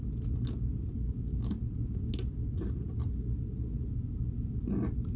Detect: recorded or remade recorded